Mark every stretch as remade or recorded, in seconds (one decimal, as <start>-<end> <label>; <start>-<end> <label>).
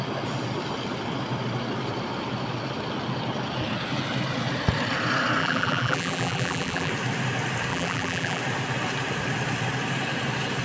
0.0-5.4 recorded; 5.4-6.9 remade; 6.9-7.7 recorded; 7.7-8.4 remade; 8.4-10.6 recorded